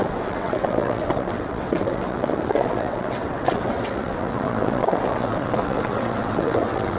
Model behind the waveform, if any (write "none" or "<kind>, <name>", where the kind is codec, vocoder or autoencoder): vocoder, WaveNeXt